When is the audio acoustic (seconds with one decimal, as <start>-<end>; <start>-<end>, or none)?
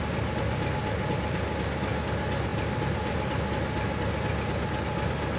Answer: 0.0-5.4